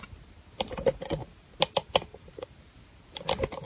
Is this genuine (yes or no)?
yes